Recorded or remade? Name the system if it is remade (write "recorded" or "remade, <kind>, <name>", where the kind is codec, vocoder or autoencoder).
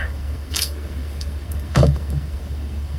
remade, codec, SNAC